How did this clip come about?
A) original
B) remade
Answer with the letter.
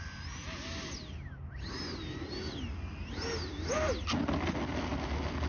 A